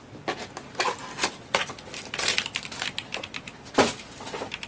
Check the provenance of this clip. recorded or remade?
recorded